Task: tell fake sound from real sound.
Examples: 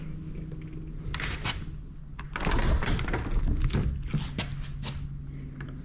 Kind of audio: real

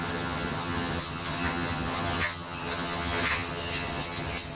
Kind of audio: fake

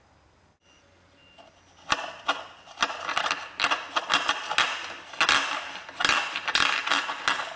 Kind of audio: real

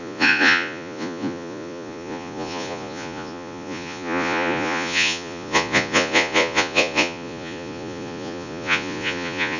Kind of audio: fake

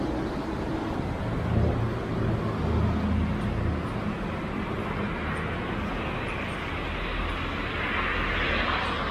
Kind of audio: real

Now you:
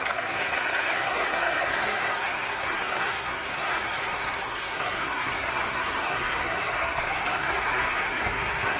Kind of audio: fake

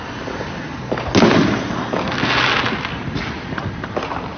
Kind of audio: real